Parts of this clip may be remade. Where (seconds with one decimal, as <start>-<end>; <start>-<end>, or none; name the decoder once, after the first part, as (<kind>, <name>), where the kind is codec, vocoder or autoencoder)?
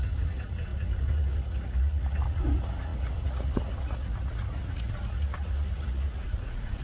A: 0.0-6.8 (vocoder, Vocos)